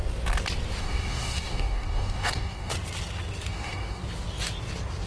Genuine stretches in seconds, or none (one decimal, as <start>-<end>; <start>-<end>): 0.0-0.8; 2.7-3.5; 4.0-5.1